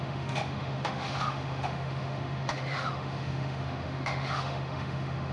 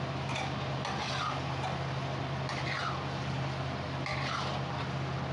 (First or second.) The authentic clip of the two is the second